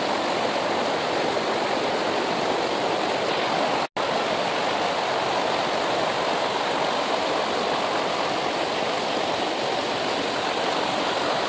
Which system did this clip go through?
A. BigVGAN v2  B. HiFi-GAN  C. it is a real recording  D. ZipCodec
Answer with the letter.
C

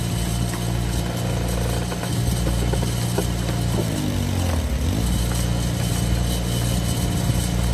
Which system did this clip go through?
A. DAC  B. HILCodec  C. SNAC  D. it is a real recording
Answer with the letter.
D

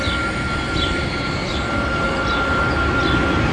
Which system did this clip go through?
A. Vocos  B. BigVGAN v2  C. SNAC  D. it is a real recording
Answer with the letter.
D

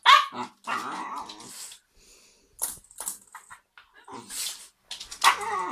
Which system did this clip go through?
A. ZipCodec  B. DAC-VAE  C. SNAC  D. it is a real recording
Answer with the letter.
D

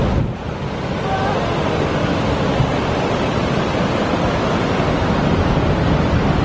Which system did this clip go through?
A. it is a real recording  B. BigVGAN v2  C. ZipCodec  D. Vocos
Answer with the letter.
A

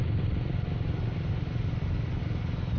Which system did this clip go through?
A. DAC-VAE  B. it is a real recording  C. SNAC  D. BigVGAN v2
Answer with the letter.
B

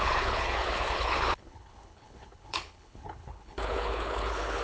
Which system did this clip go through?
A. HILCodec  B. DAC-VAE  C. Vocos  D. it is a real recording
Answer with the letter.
A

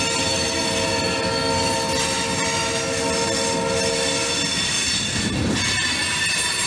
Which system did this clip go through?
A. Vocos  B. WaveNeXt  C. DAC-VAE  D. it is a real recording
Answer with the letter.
D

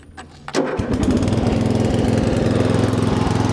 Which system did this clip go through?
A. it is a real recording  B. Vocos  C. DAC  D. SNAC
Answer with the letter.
A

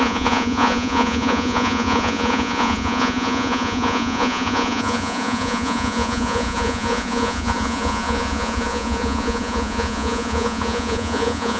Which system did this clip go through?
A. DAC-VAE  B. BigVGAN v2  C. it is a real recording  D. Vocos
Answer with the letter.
D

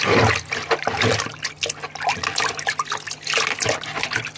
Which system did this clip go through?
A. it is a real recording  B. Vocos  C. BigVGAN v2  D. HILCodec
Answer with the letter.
A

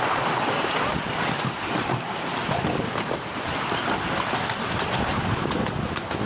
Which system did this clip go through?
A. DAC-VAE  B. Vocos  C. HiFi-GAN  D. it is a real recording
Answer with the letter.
D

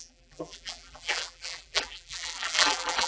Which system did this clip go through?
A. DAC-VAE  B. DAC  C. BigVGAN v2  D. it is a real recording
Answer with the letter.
C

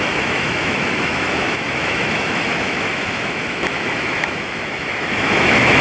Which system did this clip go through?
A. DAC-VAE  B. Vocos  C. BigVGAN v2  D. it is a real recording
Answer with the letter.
A